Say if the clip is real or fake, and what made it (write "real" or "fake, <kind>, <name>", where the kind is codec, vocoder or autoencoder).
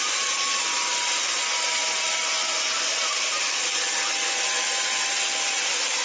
real